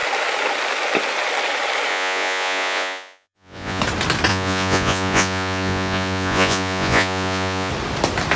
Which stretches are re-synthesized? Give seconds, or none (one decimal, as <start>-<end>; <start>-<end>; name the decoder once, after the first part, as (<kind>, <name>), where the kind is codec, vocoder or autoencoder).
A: 1.9-3.8 (vocoder, Vocos); 4.3-7.7